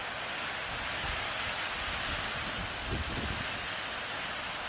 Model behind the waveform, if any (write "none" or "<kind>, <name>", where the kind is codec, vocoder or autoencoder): none